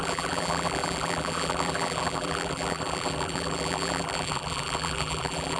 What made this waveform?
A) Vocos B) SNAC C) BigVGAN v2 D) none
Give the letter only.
C